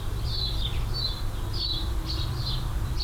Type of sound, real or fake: real